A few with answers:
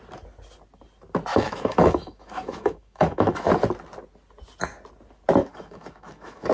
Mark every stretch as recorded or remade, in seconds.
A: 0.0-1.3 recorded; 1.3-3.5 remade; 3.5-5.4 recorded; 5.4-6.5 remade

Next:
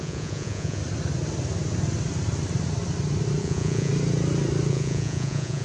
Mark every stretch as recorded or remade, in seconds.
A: 0.0-0.8 remade; 0.8-3.4 recorded; 3.4-3.9 remade; 3.9-4.7 recorded; 4.7-5.6 remade

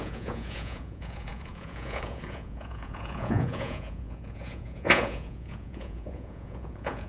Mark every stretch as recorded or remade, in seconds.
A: 0.0-7.1 remade

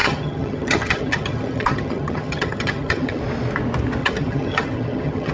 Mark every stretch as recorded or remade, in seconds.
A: 0.0-3.2 remade; 3.2-4.0 recorded; 4.0-5.3 remade

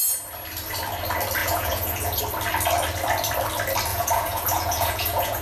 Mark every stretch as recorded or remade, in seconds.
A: 0.0-1.4 recorded; 1.4-2.2 remade; 2.2-3.9 recorded; 3.9-5.4 remade

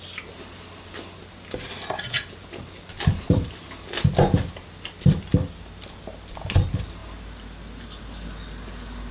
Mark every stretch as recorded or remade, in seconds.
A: 0.0-9.1 recorded

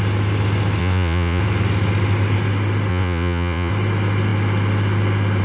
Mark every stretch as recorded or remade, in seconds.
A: 0.0-0.8 recorded; 0.8-1.4 remade; 1.4-2.9 recorded; 2.9-3.7 remade; 3.7-5.4 recorded

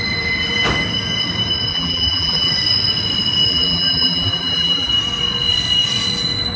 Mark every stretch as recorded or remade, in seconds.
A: 0.0-1.7 recorded; 1.7-2.5 remade; 2.5-3.5 recorded; 3.5-4.9 remade; 4.9-6.6 recorded